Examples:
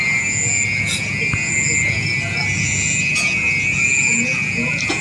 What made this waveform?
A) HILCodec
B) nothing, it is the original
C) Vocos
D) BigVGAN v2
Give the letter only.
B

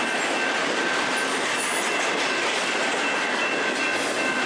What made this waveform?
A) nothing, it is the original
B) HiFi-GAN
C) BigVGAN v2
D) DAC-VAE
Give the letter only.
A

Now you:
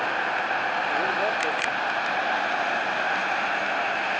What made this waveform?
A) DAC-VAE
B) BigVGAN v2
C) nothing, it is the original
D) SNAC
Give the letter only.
C